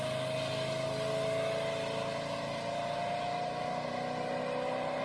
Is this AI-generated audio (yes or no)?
no